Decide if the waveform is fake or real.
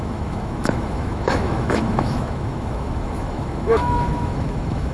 fake